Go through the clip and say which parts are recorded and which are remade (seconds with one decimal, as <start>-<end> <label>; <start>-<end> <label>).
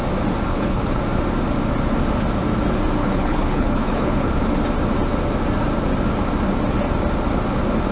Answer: 0.0-0.5 recorded; 0.5-1.0 remade; 1.0-3.0 recorded; 3.0-4.4 remade; 4.4-7.9 recorded